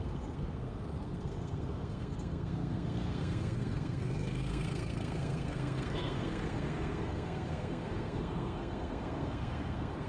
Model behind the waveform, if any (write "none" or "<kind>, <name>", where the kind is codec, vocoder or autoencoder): codec, SNAC